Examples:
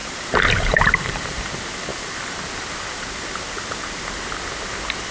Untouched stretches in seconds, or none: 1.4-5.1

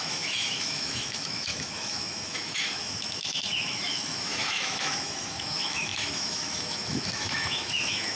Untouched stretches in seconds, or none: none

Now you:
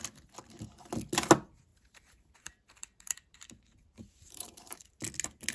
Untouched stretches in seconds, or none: 0.0-1.7; 5.0-5.5

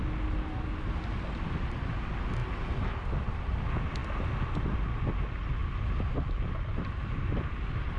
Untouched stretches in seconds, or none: 0.0-8.0

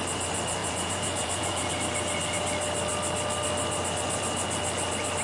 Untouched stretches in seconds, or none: 0.0-0.6; 1.7-5.2

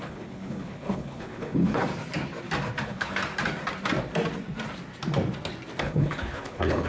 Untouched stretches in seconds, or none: 1.8-2.8; 3.2-5.8

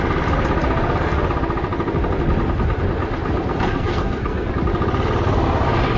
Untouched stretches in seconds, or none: 0.0-3.5; 4.5-6.0